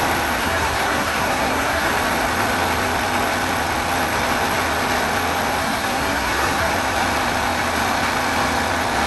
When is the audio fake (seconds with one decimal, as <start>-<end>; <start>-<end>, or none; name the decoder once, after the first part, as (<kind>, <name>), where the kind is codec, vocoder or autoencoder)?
0.4-1.9 (codec, SNAC); 5.6-6.7